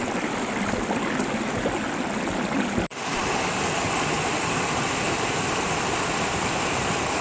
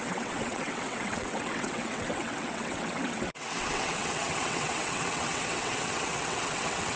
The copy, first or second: second